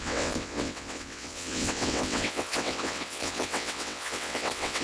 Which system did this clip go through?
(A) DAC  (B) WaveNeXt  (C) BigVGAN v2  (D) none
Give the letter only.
B